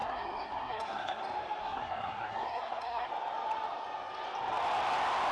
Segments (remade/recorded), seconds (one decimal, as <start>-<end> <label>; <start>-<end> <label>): 0.0-1.2 remade; 1.2-1.6 recorded; 1.6-3.1 remade; 3.1-5.3 recorded